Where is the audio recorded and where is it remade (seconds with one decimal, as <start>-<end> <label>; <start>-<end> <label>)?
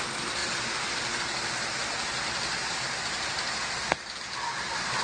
0.0-5.0 recorded